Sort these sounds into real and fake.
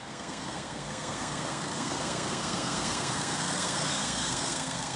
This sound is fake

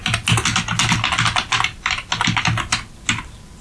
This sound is real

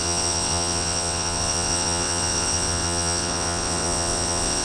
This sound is fake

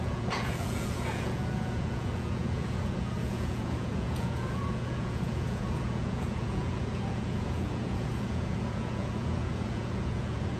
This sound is fake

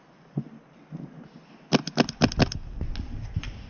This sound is real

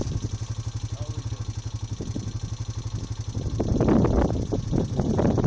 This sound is real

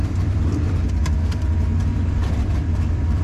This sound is fake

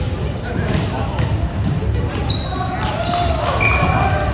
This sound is real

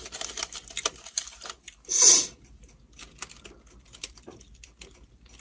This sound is real